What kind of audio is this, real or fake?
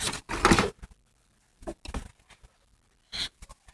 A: real